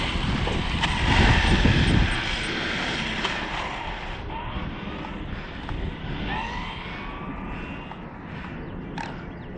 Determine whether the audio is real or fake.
real